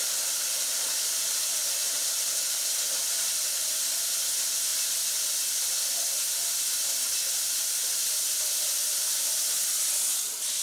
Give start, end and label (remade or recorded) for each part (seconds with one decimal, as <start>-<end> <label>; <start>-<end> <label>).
0.0-2.7 remade; 2.7-4.7 recorded; 4.7-5.6 remade; 5.6-10.6 recorded